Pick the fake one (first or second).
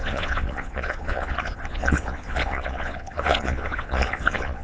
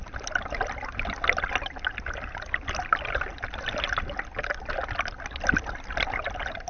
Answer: first